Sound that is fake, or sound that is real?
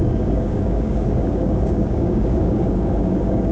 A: fake